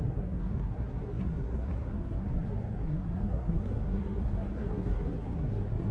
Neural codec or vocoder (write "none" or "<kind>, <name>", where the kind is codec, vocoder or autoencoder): codec, SNAC